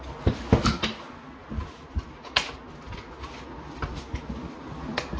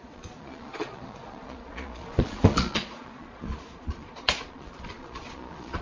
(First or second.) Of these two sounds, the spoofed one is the second